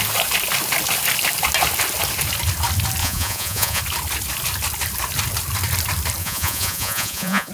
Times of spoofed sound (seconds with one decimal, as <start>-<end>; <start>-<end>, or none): 3.0-3.8; 6.2-7.5